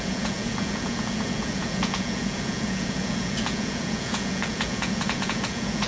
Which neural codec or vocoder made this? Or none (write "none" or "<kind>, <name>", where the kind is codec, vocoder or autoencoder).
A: vocoder, Vocos